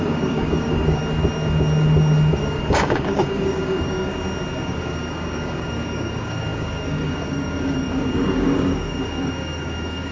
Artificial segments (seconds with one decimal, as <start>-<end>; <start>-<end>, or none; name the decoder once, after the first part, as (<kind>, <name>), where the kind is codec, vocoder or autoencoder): 0.0-1.0 (codec, DAC); 2.3-4.1; 4.6-10.1